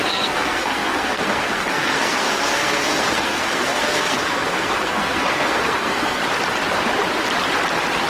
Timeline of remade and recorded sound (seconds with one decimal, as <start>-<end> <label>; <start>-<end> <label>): 0.0-6.2 remade; 6.2-8.1 recorded